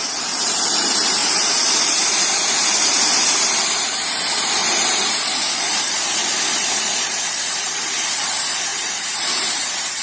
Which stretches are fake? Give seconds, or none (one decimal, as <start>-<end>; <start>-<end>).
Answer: 0.0-6.2; 6.8-10.0

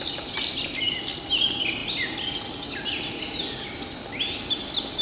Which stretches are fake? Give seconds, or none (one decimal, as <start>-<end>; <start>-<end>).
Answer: none

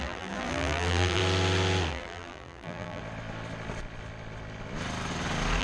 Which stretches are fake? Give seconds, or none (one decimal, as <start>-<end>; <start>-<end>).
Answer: 0.0-1.2; 1.9-3.0

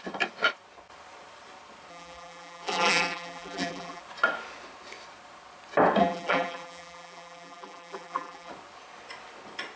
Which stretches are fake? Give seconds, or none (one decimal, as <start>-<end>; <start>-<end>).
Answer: 1.9-4.0; 6.0-8.5

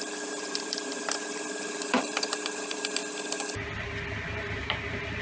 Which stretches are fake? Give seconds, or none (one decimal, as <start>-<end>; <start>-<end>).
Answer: 0.0-3.0; 4.3-5.2